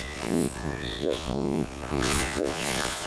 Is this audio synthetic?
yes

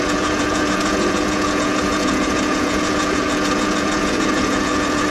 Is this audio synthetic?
yes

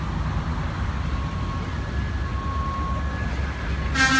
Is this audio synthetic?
no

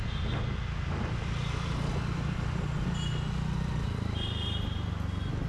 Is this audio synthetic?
no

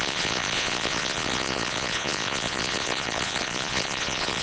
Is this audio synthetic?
yes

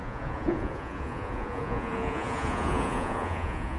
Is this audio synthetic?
yes